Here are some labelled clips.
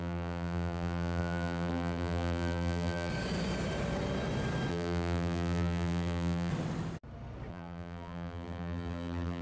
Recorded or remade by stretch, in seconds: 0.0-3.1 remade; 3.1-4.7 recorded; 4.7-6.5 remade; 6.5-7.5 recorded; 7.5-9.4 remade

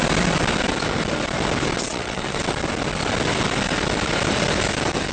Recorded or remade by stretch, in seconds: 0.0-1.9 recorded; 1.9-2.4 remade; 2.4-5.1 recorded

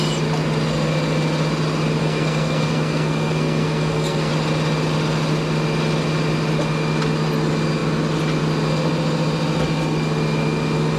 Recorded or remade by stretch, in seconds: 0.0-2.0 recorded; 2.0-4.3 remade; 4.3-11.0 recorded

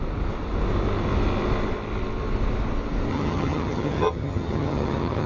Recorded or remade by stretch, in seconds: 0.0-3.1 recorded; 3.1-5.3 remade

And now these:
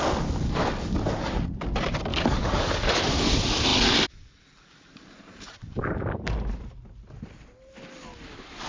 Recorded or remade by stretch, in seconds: 0.0-2.1 recorded; 2.1-3.0 remade; 3.0-8.7 recorded

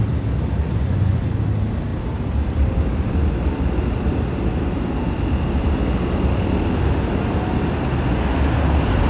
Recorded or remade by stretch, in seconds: 0.0-0.6 recorded; 0.6-1.2 remade; 1.2-9.1 recorded

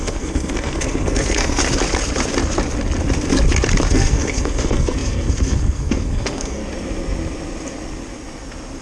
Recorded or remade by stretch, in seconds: 0.0-1.6 remade; 1.6-3.9 recorded; 3.9-6.6 remade; 6.6-8.8 recorded